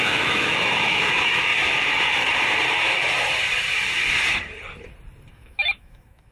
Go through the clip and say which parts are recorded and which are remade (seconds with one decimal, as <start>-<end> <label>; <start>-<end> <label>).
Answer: 0.0-1.5 remade; 1.5-5.3 recorded; 5.3-6.3 remade